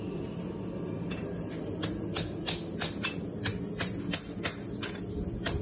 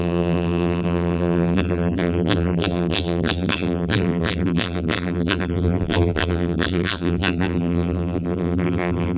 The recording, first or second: first